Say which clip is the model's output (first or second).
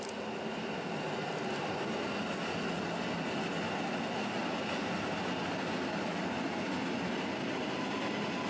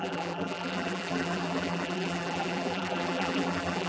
second